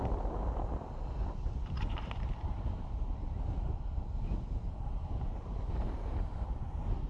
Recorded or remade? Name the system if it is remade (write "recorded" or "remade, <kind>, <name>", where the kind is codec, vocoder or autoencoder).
recorded